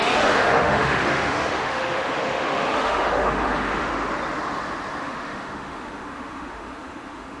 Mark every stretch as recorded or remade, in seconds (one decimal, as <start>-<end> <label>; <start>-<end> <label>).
0.0-3.9 remade; 3.9-5.0 recorded; 5.0-7.4 remade